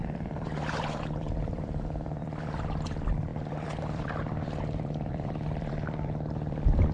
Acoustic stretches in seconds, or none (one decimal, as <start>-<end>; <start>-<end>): none